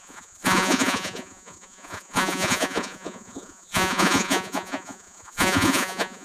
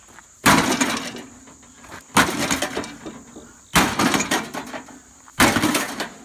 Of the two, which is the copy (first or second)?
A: first